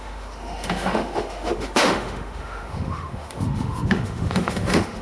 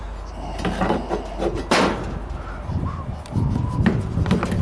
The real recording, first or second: second